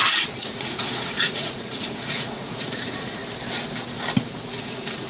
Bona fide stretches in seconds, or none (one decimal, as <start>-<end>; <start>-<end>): 3.2-4.6